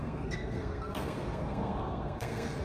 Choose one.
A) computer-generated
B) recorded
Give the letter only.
A